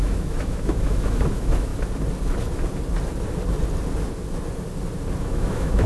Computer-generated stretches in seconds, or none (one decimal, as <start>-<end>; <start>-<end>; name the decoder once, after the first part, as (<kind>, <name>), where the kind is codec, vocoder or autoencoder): 0.0-1.7 (autoencoder, DAC-VAE); 5.2-5.9